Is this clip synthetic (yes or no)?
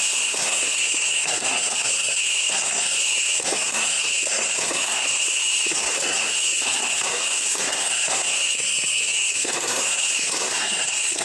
yes